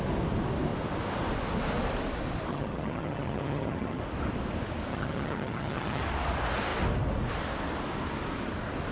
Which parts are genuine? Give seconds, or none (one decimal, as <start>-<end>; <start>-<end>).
0.0-2.5; 4.0-4.9; 6.0-8.9